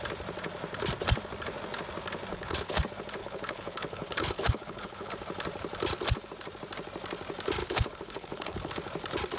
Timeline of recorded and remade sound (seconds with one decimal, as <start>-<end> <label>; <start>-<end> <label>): 0.0-2.3 recorded; 2.3-2.8 remade; 2.8-3.2 recorded; 3.2-5.1 remade; 5.1-7.6 recorded; 7.6-8.7 remade; 8.7-9.4 recorded